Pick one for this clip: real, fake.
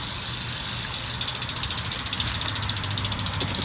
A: real